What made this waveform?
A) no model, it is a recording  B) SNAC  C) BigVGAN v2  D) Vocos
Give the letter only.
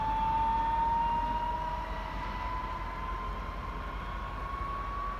A